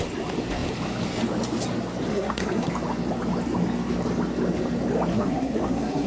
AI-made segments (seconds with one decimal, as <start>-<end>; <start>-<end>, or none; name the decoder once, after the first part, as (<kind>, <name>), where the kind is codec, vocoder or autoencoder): 2.1-2.7 (codec, SNAC); 5.1-6.1